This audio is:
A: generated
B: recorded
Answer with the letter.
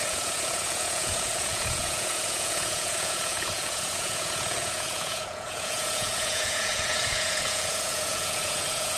A